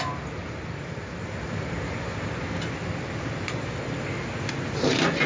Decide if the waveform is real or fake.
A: real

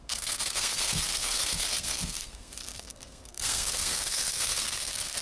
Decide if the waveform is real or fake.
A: fake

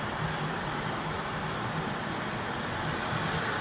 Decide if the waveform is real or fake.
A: real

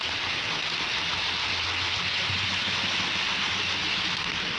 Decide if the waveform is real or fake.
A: real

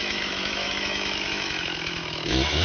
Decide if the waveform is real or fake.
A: fake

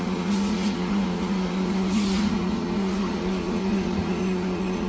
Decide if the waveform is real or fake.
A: fake